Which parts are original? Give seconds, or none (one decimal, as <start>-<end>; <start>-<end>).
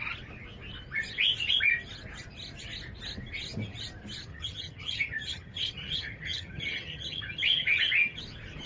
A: 0.0-4.3; 8.2-8.7